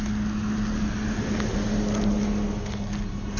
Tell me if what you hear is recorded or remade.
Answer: recorded